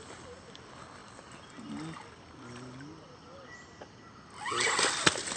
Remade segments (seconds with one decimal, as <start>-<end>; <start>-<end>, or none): none

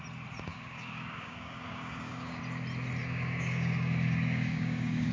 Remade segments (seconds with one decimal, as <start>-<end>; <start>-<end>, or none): 0.5-2.4; 3.0-5.1